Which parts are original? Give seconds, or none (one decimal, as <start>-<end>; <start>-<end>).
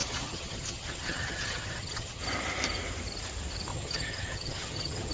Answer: 2.2-3.7